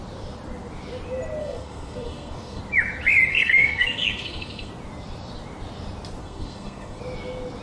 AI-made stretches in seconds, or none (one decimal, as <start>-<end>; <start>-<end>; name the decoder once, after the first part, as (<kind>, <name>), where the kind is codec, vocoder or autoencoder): 1.4-2.6 (codec, SNAC); 3.3-4.7; 6.2-7.0